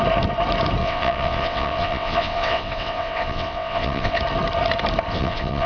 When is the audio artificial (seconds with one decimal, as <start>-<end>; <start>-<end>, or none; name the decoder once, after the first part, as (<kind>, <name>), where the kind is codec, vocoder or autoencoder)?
0.8-4.2 (vocoder, WaveNeXt); 5.1-5.7